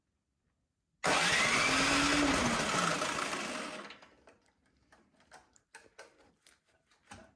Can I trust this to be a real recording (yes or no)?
yes